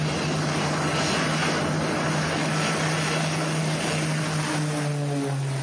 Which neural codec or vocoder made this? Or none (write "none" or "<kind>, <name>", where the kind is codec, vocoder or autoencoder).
none